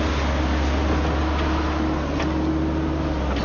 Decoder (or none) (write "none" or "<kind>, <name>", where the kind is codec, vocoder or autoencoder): none